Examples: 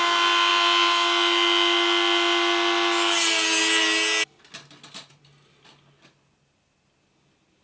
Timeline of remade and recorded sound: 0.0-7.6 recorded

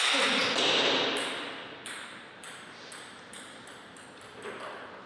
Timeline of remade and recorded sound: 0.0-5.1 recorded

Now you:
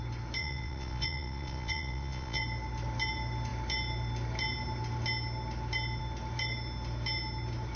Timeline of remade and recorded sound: 0.0-0.4 recorded; 0.4-2.4 remade; 2.4-7.8 recorded

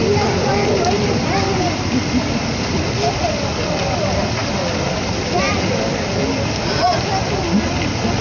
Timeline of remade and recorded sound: 0.0-8.2 recorded

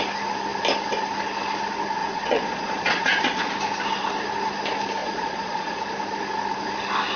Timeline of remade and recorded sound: 0.0-2.0 recorded; 2.0-3.5 remade; 3.5-5.0 recorded; 5.0-5.8 remade; 5.8-7.2 recorded

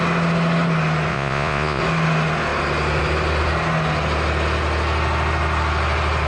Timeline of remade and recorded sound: 0.0-1.1 recorded; 1.1-1.8 remade; 1.8-6.3 recorded